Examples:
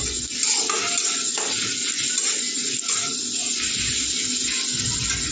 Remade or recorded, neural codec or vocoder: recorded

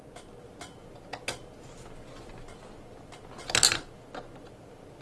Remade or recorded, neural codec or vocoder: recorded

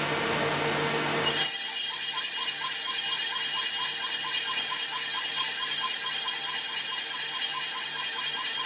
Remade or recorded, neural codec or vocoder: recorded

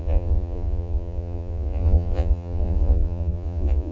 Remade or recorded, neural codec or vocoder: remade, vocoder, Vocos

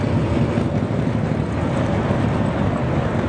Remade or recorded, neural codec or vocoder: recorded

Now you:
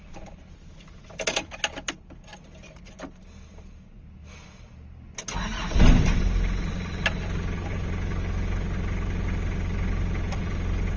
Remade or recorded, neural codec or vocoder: recorded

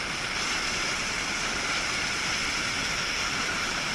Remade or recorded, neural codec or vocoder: recorded